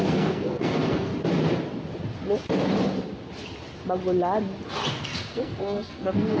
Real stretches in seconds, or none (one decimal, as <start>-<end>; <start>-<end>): 1.1-4.9